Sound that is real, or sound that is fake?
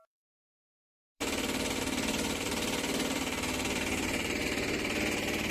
fake